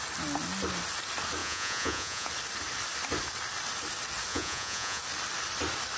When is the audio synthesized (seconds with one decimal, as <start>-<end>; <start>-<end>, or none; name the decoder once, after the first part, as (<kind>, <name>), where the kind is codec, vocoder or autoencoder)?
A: 1.4-2.3 (vocoder, Vocos); 4.3-5.0